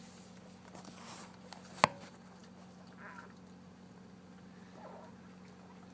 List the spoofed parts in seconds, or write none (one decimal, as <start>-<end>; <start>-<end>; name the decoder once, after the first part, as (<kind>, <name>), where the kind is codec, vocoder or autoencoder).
none